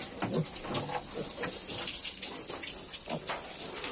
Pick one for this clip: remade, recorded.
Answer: recorded